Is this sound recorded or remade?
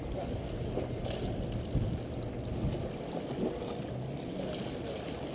recorded